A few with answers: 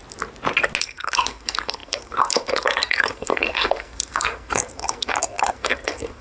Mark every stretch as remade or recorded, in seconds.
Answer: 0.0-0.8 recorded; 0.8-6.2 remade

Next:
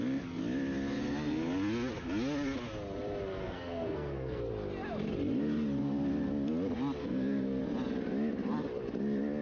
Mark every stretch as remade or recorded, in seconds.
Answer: 0.0-3.4 recorded; 3.4-4.5 remade; 4.5-7.0 recorded; 7.0-7.6 remade; 7.6-9.4 recorded

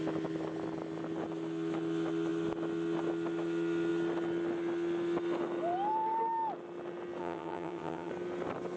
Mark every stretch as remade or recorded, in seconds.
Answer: 0.0-7.2 recorded; 7.2-8.1 remade; 8.1-8.8 recorded